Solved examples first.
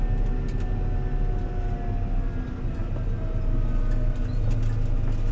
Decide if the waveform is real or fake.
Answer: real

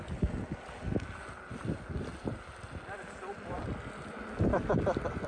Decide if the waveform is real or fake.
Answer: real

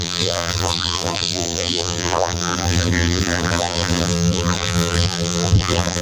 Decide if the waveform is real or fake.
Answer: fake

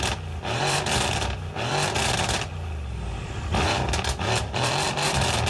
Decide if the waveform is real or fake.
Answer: fake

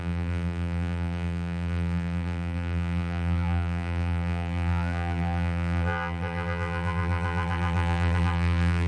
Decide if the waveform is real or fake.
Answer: fake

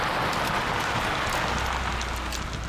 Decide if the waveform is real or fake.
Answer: real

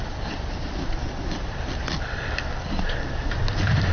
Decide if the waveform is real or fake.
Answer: fake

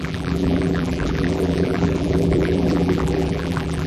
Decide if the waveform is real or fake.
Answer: fake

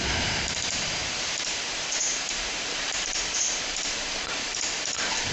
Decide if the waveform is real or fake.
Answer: fake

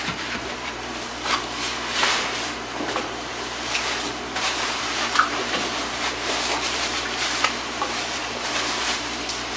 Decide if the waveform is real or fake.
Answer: fake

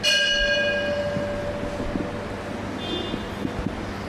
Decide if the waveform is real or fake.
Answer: real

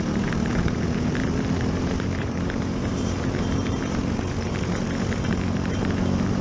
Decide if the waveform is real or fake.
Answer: fake